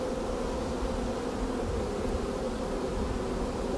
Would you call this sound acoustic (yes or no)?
yes